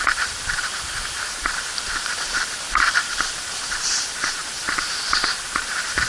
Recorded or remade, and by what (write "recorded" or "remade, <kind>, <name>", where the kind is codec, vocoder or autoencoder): remade, vocoder, BigVGAN v2